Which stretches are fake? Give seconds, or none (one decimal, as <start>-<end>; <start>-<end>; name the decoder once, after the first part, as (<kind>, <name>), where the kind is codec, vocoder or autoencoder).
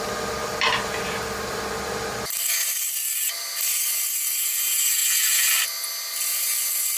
0.4-4.6 (vocoder, BigVGAN v2)